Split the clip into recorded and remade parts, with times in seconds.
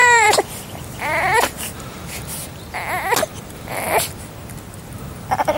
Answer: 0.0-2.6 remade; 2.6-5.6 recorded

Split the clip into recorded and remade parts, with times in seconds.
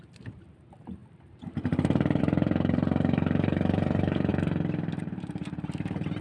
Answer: 0.0-4.3 remade; 4.3-5.0 recorded; 5.0-6.2 remade